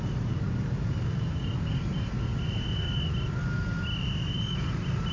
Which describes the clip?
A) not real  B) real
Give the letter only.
B